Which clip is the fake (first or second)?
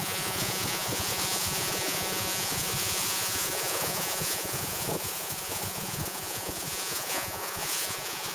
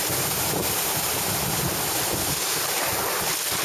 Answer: first